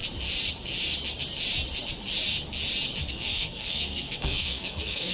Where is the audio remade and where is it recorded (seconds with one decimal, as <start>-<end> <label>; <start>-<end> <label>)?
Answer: 0.0-3.1 recorded; 3.1-5.1 remade